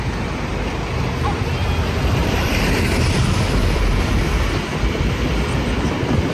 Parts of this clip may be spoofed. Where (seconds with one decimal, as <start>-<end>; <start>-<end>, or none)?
2.2-4.2

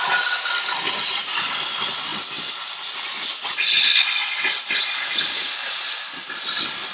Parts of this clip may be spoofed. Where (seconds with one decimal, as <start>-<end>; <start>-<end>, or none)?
none

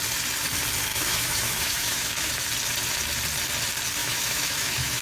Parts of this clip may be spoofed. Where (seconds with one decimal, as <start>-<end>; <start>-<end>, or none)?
0.9-2.3; 4.0-5.0

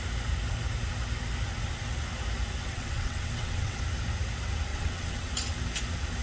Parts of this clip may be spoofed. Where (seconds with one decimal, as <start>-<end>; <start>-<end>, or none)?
2.6-3.8; 4.7-5.3

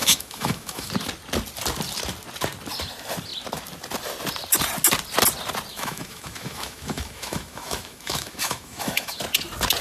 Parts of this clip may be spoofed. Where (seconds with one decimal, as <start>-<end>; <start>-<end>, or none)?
0.0-0.9; 5.7-9.2

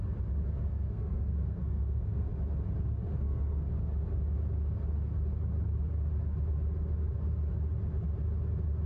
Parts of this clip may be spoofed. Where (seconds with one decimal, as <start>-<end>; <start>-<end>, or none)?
0.7-2.3; 3.1-3.7